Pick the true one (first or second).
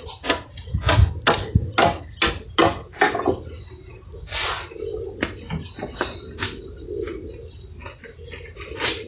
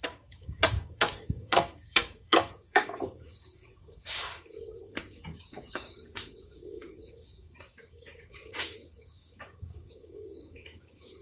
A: first